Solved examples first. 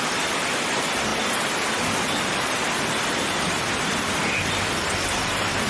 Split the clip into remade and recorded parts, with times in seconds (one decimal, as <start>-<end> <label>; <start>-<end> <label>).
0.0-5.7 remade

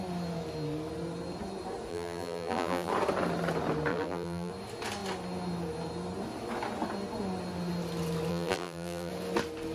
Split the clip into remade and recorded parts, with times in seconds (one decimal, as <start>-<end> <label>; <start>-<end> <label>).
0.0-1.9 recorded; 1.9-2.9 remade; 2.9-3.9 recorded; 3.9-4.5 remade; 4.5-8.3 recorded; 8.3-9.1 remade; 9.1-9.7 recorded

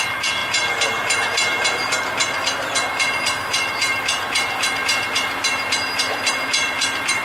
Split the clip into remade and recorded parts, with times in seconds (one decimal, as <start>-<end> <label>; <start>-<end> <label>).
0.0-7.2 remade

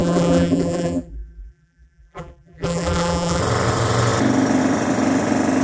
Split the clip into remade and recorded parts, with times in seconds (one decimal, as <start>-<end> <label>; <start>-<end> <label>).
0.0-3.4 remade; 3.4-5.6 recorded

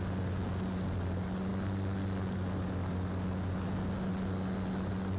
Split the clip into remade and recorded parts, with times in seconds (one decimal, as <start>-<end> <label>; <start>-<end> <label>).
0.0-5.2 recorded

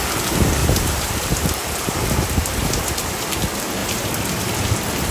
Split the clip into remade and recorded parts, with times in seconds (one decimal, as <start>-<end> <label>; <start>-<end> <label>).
0.0-0.6 recorded; 0.6-3.3 remade; 3.3-3.8 recorded; 3.8-4.3 remade; 4.3-5.1 recorded

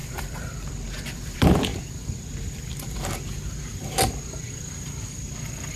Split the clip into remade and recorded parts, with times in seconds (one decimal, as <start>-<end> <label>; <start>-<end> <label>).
0.0-1.7 remade; 1.7-5.0 recorded; 5.0-5.8 remade

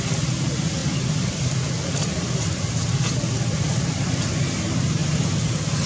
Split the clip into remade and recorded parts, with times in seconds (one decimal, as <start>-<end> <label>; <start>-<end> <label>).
0.0-0.8 recorded; 0.8-4.3 remade; 4.3-5.0 recorded; 5.0-5.5 remade; 5.5-5.9 recorded